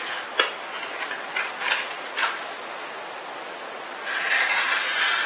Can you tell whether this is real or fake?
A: real